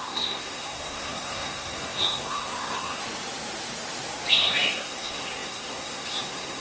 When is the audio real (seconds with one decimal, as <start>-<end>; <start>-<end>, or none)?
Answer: 3.0-4.3